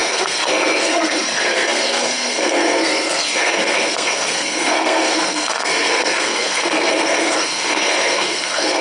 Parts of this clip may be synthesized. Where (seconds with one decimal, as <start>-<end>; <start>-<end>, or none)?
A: 0.0-8.8